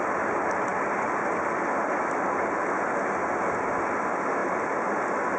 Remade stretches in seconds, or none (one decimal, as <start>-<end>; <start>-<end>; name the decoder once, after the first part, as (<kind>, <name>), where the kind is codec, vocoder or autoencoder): none